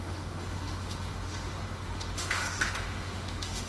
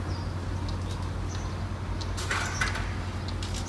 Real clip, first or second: second